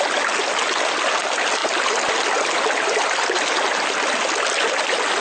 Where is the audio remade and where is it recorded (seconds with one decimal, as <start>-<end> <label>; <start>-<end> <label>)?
0.0-5.2 recorded